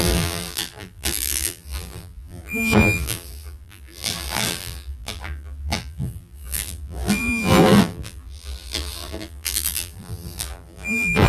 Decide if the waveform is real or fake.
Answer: fake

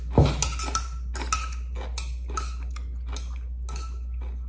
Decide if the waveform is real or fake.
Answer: real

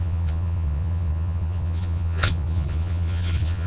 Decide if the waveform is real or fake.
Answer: fake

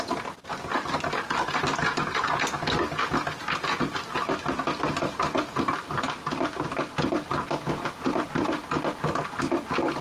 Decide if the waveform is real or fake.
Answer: real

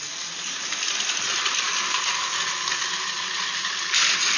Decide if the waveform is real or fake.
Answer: real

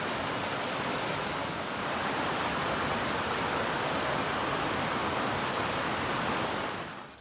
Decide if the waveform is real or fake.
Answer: fake